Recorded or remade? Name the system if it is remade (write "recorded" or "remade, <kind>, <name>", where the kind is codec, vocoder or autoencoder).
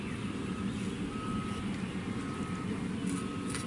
recorded